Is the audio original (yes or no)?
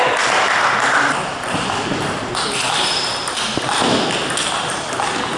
no